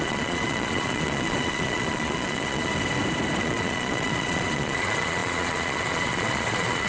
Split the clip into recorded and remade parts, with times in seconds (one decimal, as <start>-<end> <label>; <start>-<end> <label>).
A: 0.0-2.7 remade; 2.7-3.4 recorded; 3.4-6.9 remade